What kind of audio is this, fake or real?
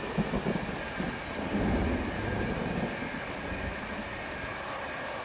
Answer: real